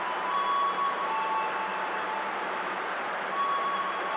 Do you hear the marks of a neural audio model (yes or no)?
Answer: yes